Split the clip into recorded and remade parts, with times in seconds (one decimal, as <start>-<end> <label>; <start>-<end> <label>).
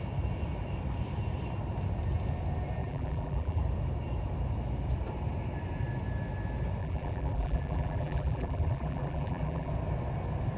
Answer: 0.0-2.8 recorded; 2.8-3.6 remade; 3.6-6.8 recorded; 6.8-9.7 remade; 9.7-10.6 recorded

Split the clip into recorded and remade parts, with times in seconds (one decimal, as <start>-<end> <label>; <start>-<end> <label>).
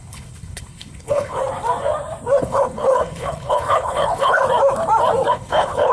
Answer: 0.0-1.4 remade; 1.4-2.4 recorded; 2.4-4.4 remade; 4.4-5.3 recorded; 5.3-5.9 remade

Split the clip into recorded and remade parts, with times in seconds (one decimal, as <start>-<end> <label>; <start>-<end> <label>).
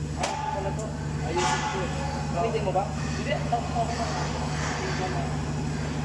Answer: 0.0-6.0 recorded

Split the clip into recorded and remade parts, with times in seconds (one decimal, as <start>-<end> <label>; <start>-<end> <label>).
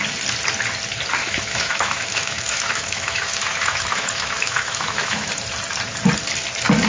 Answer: 0.0-1.2 recorded; 1.2-5.3 remade; 5.3-6.9 recorded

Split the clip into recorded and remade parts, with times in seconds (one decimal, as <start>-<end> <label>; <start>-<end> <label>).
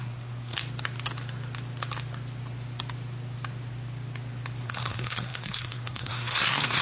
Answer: 0.0-0.6 remade; 0.6-4.6 recorded; 4.6-6.8 remade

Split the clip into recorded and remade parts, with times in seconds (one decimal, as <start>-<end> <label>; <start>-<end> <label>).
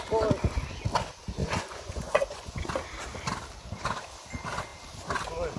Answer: 0.0-1.4 recorded; 1.4-2.7 remade; 2.7-5.6 recorded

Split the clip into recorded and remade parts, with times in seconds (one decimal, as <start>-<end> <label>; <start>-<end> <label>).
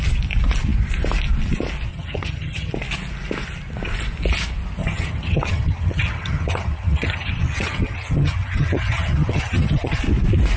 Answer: 0.0-1.9 recorded; 1.9-2.7 remade; 2.7-4.8 recorded; 4.8-10.0 remade; 10.0-10.6 recorded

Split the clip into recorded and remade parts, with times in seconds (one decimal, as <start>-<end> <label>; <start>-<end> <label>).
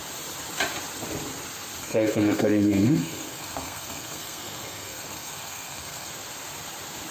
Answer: 0.0-1.8 recorded; 1.8-6.1 remade; 6.1-7.1 recorded